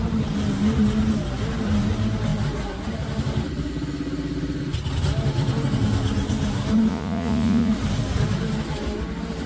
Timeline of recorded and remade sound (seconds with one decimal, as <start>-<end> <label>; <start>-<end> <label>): 0.0-6.9 recorded; 6.9-7.7 remade; 7.7-9.5 recorded